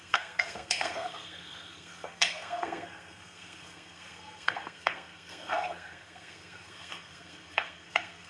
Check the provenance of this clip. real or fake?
fake